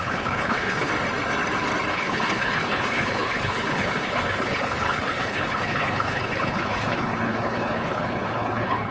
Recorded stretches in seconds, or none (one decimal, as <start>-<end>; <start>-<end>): 0.9-1.9